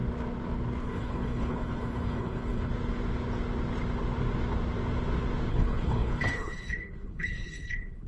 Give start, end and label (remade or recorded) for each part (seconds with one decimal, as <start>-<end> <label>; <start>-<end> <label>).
0.0-0.8 recorded; 0.8-2.7 remade; 2.7-5.5 recorded; 5.5-8.1 remade